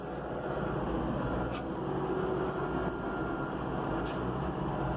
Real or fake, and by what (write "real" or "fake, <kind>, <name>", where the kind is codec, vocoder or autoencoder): real